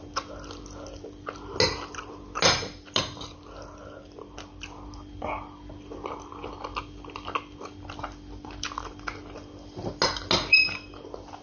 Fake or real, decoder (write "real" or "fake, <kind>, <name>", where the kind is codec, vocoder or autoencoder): real